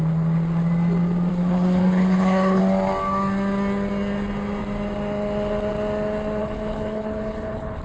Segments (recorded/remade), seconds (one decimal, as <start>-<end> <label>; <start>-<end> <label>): 0.0-1.3 recorded; 1.3-2.6 remade; 2.6-6.4 recorded; 6.4-7.8 remade